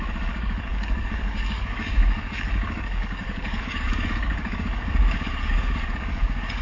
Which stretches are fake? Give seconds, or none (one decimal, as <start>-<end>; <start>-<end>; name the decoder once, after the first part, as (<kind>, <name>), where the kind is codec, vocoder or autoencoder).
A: 0.0-6.6 (codec, DAC)